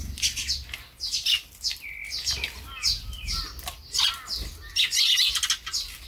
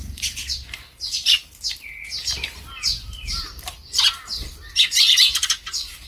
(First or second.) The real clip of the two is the first